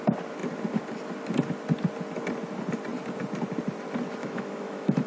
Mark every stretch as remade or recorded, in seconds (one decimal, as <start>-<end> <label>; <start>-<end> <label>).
0.0-4.2 recorded; 4.2-5.1 remade